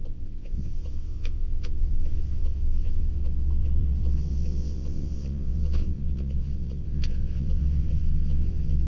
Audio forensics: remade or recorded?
remade